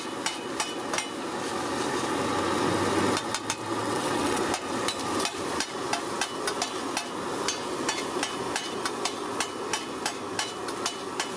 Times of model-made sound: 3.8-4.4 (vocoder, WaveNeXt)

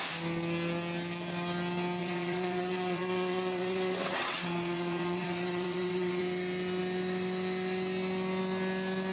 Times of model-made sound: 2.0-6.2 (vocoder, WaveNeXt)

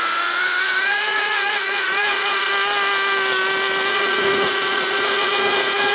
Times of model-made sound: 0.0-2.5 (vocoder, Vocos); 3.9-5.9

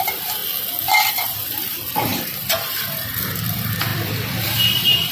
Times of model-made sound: 0.0-0.4 (vocoder, BigVGAN v2); 1.1-5.1

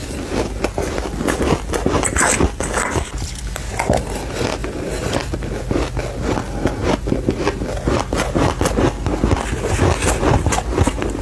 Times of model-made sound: 0.0-3.7 (vocoder, BigVGAN v2); 4.6-5.5